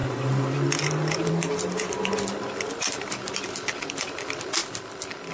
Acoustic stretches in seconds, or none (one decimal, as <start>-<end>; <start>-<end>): 3.2-4.6